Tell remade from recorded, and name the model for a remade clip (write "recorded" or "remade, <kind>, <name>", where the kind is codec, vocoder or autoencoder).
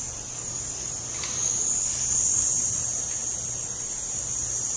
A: recorded